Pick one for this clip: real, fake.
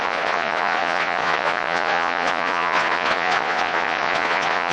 fake